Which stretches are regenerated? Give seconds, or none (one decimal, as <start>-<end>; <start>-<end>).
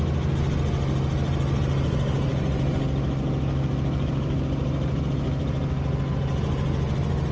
none